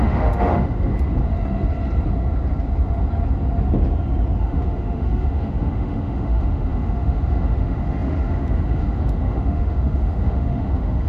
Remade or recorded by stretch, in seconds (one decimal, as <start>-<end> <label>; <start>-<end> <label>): 0.0-0.9 remade; 0.9-4.4 recorded; 4.4-11.1 remade